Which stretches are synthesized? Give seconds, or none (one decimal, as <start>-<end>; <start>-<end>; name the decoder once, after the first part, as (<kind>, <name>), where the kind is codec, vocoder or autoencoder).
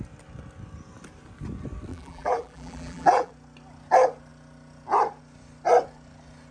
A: 1.9-3.3 (vocoder, BigVGAN v2)